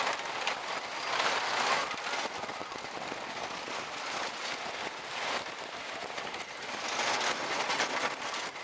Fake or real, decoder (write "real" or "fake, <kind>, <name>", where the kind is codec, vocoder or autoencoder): real